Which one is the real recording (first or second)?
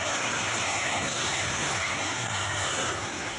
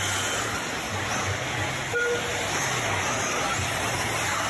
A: second